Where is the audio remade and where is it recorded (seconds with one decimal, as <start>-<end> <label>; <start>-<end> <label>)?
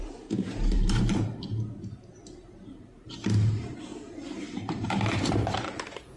0.0-3.9 remade; 3.9-4.6 recorded; 4.6-6.2 remade